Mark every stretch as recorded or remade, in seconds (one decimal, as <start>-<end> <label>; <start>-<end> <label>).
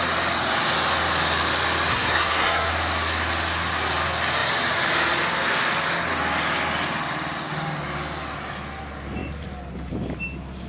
0.0-1.9 recorded; 1.9-2.7 remade; 2.7-10.7 recorded